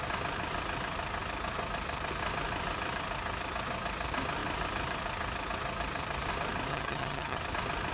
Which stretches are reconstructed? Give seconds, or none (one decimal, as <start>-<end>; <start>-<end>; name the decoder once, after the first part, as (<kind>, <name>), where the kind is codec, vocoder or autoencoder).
6.7-7.4 (vocoder, HiFi-GAN)